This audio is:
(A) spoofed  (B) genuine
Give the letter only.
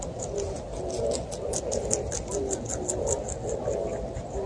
B